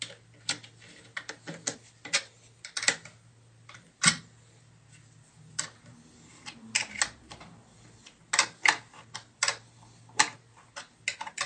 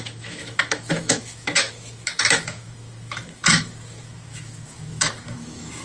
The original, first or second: first